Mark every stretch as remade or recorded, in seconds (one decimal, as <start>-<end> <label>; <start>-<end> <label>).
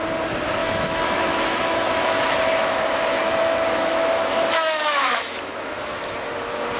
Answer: 0.0-0.6 recorded; 0.6-2.8 remade; 2.8-3.2 recorded; 3.2-6.0 remade; 6.0-6.8 recorded